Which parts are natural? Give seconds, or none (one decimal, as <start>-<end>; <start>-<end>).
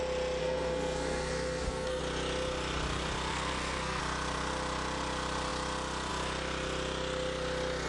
0.0-0.4; 2.0-3.3; 4.0-7.9